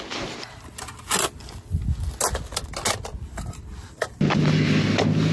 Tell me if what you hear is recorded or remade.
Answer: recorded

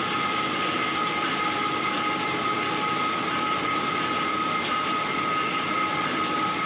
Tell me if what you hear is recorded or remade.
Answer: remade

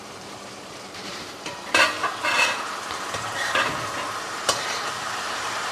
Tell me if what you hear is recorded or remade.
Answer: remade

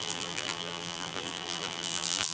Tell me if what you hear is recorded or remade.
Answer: remade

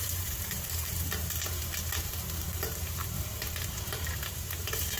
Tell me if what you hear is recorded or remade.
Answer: remade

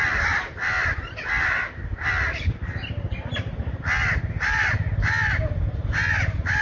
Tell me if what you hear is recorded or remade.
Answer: recorded